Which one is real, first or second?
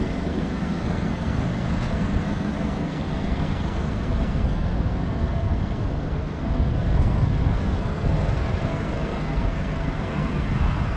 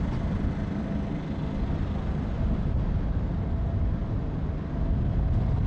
second